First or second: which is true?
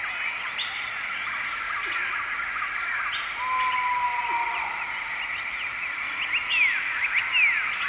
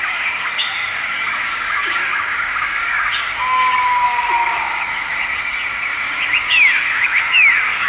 first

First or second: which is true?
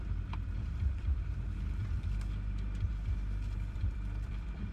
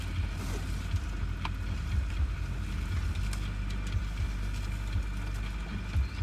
second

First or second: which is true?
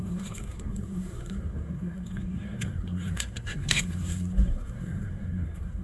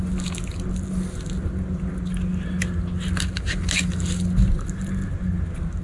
second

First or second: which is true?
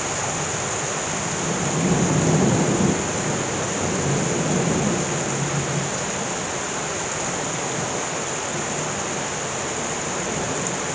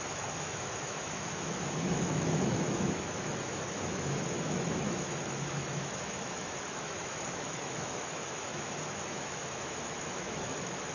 first